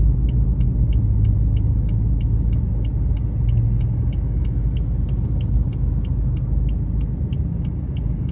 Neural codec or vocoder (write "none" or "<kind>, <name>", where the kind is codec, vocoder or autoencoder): none